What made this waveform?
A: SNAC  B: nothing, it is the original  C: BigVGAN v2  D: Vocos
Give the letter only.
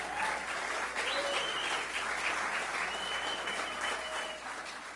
B